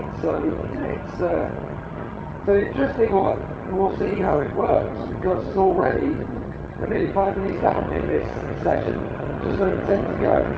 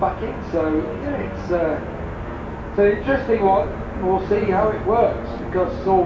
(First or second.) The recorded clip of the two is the second